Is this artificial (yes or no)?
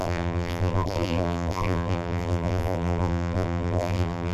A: yes